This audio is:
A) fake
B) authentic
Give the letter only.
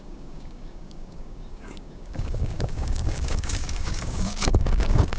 A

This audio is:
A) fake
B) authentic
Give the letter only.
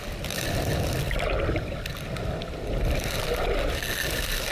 B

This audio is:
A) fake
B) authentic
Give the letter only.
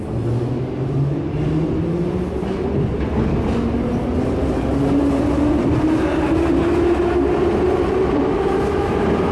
B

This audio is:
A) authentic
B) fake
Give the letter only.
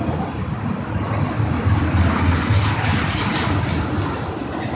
A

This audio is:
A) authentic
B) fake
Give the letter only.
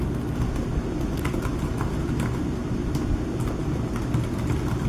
A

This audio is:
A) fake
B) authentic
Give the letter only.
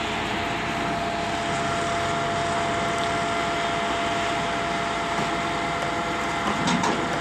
B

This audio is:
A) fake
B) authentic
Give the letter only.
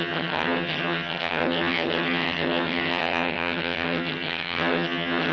A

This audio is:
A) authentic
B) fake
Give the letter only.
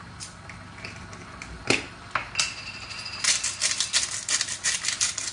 A